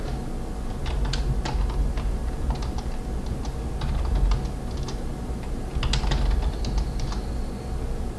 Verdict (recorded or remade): recorded